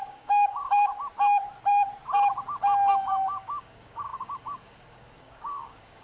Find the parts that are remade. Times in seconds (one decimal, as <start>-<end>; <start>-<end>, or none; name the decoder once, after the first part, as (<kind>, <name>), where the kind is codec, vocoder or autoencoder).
0.0-0.9 (codec, DAC); 2.9-6.0